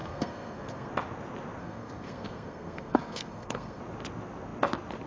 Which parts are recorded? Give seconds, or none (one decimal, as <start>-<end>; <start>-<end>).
0.9-1.6; 3.8-5.1